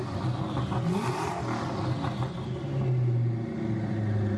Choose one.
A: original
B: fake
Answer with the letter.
A